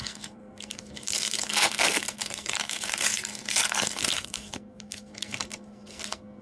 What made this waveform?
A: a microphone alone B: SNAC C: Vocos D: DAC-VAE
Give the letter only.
B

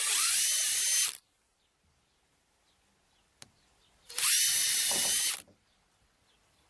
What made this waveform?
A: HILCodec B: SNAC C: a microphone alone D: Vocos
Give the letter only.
C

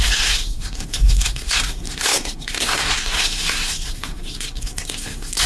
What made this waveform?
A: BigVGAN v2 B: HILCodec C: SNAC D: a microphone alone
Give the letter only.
C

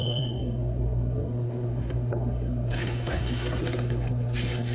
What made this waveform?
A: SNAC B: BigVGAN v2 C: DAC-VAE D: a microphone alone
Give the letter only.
A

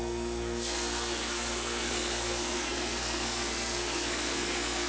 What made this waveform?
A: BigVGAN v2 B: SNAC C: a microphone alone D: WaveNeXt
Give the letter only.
B